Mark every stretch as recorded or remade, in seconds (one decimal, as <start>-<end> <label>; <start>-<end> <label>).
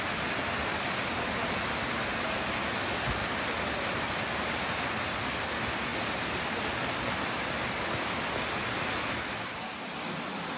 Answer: 0.0-10.6 recorded